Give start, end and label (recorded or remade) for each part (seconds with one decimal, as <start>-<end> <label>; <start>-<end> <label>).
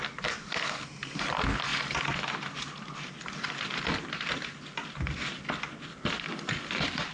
0.0-7.1 recorded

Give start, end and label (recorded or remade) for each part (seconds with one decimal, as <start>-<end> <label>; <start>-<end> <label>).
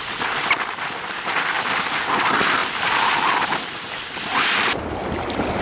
0.0-5.6 recorded